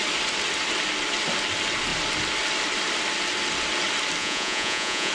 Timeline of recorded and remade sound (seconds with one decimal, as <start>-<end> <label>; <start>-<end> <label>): 0.0-4.2 recorded; 4.2-5.1 remade